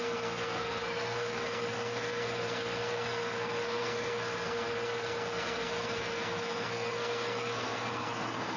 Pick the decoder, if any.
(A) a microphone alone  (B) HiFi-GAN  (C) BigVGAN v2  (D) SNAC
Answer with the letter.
D